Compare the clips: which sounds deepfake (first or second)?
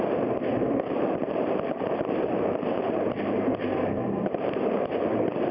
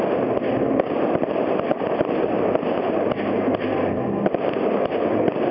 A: first